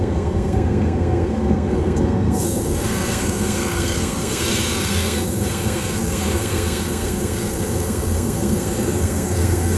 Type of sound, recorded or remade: remade